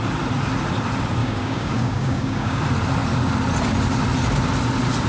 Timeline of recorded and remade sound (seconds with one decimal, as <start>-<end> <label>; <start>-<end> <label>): 0.0-1.2 recorded; 1.2-2.6 remade; 2.6-5.1 recorded